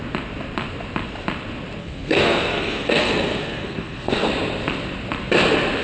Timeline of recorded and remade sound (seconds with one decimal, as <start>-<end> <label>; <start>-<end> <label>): 0.0-1.8 recorded; 1.8-4.3 remade; 4.3-5.8 recorded

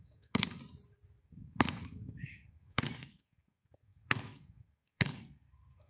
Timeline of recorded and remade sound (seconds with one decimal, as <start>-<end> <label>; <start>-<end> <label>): 0.0-0.6 remade; 0.6-1.2 recorded; 1.2-5.9 remade

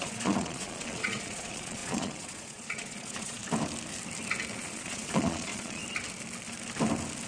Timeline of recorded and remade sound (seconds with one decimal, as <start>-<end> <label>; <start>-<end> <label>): 0.0-3.4 remade; 3.4-4.5 recorded; 4.5-5.8 remade; 5.8-7.3 recorded

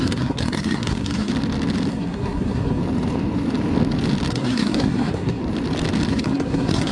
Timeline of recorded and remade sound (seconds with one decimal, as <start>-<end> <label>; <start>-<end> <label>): 0.0-1.3 remade; 1.3-1.9 recorded; 1.9-2.8 remade; 2.8-4.3 recorded; 4.3-5.4 remade; 5.4-6.1 recorded; 6.1-6.9 remade

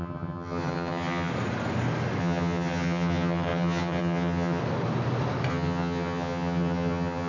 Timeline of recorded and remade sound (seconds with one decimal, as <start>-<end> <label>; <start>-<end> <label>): 0.0-1.3 remade; 1.3-2.2 recorded; 2.2-4.6 remade; 4.6-5.5 recorded; 5.5-7.3 remade

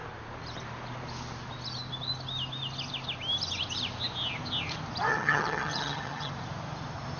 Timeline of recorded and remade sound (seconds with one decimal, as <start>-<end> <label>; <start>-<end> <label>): 0.0-5.1 recorded; 5.1-6.3 remade; 6.3-7.2 recorded

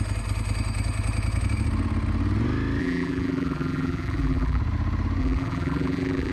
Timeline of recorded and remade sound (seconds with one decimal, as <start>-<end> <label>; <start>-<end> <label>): 0.0-2.8 recorded; 2.8-4.6 remade; 4.6-5.2 recorded; 5.2-6.3 remade

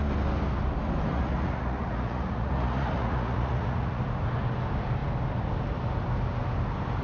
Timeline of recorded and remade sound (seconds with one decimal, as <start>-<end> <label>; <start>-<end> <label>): 0.0-1.1 recorded; 1.1-4.0 remade; 4.0-7.0 recorded